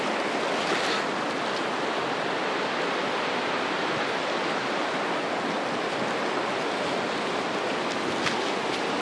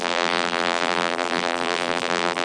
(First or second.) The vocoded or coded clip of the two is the second